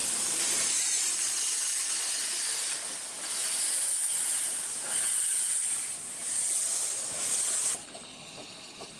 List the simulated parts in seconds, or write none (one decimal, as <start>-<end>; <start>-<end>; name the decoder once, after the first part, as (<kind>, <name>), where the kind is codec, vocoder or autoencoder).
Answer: 0.0-1.1 (vocoder, BigVGAN v2); 3.9-6.5; 8.1-9.0